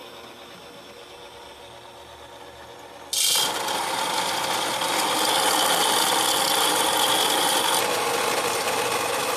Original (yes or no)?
yes